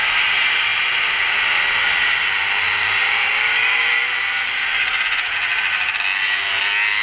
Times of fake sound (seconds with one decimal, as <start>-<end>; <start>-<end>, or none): none